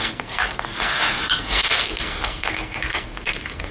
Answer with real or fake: fake